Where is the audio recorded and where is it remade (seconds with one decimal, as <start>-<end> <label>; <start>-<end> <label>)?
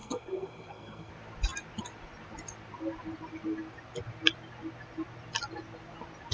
0.0-1.1 remade; 1.1-6.3 recorded